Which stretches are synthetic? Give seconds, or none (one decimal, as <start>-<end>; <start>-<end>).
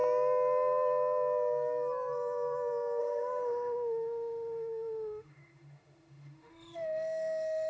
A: 3.0-7.7